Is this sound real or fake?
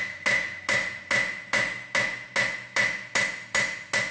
real